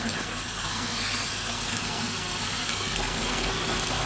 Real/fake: fake